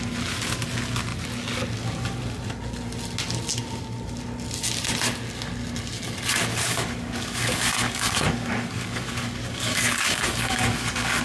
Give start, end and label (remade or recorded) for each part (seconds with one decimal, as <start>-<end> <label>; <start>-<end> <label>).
0.0-6.5 recorded; 6.5-11.2 remade